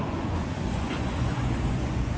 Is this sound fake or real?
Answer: fake